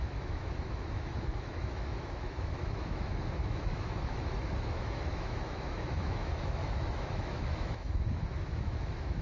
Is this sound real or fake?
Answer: fake